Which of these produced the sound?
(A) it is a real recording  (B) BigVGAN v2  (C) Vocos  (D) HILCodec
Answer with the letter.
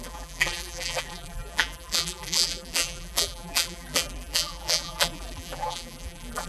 B